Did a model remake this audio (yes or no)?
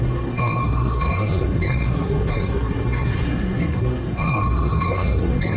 yes